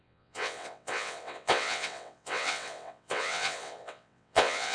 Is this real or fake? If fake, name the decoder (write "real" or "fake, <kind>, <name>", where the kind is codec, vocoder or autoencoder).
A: fake, vocoder, WaveNeXt